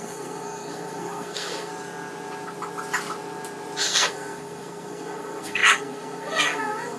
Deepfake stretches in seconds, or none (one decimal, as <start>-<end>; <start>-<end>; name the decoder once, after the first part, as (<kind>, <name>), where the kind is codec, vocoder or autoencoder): 0.0-1.7 (codec, SNAC); 3.8-7.0